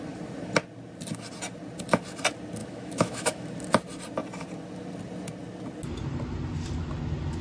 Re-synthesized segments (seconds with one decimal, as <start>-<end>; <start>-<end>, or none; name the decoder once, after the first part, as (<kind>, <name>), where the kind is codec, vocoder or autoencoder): 2.6-3.5 (autoencoder, DAC-VAE)